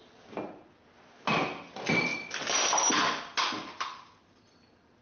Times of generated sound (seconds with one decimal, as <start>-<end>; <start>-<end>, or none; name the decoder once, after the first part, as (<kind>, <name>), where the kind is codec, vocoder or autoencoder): none